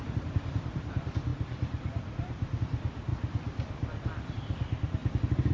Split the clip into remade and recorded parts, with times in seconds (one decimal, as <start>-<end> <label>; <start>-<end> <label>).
0.0-1.3 remade; 1.3-2.6 recorded; 2.6-3.1 remade; 3.1-4.3 recorded; 4.3-5.5 remade